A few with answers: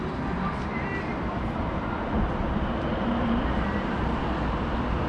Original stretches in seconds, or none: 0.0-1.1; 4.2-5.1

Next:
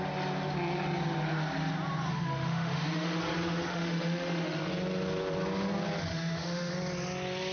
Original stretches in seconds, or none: 0.0-2.1; 3.2-3.7; 4.7-6.1; 6.7-7.5

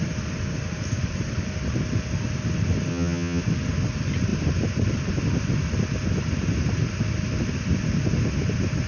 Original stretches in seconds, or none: 0.0-2.9; 3.4-8.9

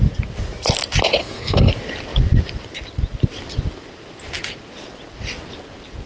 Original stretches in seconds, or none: 0.0-1.2; 1.7-6.1

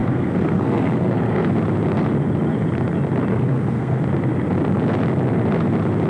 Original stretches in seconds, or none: 1.5-3.3; 4.0-6.1

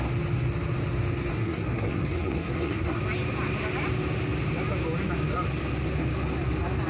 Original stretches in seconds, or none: 0.0-1.3; 3.0-6.9